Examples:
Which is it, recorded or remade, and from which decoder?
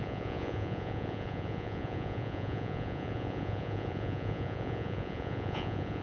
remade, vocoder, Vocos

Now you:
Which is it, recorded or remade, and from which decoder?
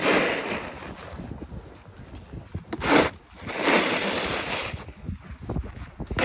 recorded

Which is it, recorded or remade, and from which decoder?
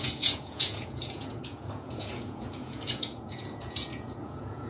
remade, vocoder, Vocos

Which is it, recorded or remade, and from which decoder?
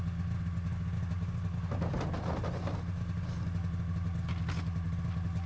recorded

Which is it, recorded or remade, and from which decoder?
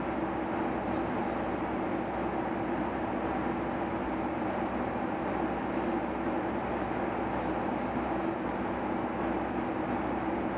recorded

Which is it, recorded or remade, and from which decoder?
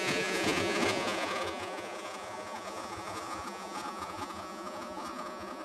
remade, vocoder, Vocos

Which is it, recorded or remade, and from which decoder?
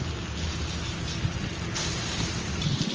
recorded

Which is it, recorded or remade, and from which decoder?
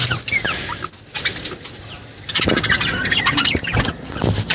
recorded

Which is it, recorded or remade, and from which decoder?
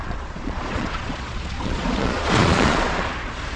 remade, vocoder, Vocos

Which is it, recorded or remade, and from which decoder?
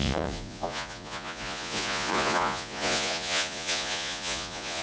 remade, vocoder, Vocos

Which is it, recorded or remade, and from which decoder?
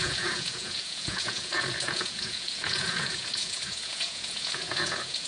remade, vocoder, Vocos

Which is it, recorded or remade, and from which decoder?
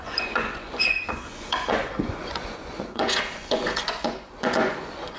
remade, vocoder, Vocos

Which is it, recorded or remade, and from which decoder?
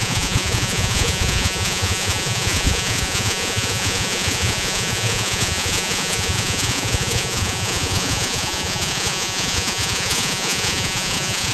remade, vocoder, Vocos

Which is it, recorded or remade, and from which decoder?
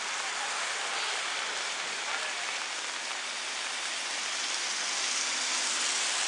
recorded